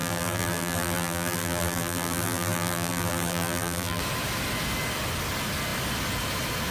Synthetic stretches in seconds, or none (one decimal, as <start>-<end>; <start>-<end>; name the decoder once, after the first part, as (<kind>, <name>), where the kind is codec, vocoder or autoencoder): 0.0-4.0 (vocoder, BigVGAN v2)